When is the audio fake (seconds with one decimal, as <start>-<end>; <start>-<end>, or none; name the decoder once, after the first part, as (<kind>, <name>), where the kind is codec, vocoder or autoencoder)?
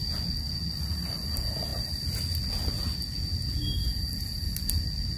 none